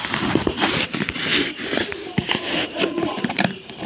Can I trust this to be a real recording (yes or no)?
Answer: no